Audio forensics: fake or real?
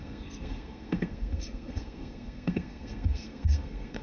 fake